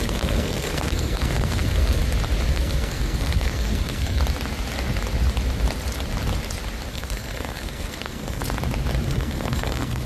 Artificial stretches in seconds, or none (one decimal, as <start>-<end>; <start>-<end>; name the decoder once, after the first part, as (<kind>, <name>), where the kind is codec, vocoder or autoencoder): 0.0-2.0 (codec, SNAC); 2.5-4.2; 6.9-8.4; 9.1-10.1